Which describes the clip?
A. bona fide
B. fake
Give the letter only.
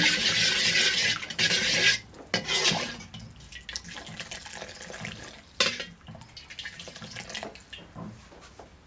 A